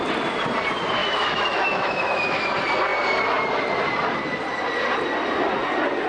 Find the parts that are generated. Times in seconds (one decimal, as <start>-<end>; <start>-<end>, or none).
1.0-2.5